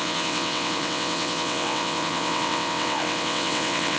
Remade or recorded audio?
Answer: remade